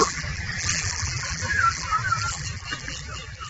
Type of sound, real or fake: fake